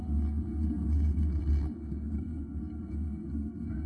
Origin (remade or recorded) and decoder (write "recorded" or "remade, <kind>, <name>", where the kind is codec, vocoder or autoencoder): remade, codec, SNAC